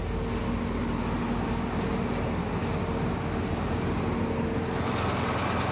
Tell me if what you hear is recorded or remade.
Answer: recorded